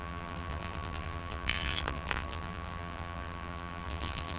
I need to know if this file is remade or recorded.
remade